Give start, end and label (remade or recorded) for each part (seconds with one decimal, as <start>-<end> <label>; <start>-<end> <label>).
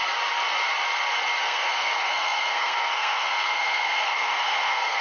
0.0-1.4 recorded; 1.4-5.0 remade